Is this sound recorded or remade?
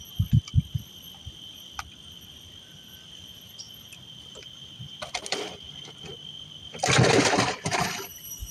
remade